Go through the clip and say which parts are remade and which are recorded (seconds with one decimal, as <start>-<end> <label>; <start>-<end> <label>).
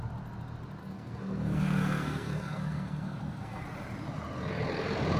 0.0-0.8 recorded; 0.8-3.6 remade; 3.6-5.2 recorded